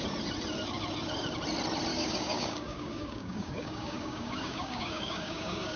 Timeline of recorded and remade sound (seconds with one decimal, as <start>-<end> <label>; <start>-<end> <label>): 0.0-1.9 recorded; 1.9-5.8 remade